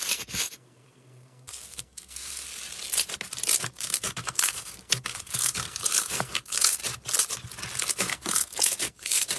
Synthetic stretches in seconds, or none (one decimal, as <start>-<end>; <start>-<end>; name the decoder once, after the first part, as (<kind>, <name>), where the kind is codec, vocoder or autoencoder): 0.0-2.5 (codec, SNAC); 3.6-6.8; 7.9-9.4